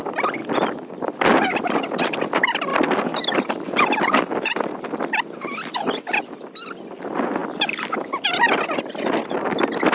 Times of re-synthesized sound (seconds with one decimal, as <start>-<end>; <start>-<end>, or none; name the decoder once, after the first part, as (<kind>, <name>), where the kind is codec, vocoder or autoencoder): none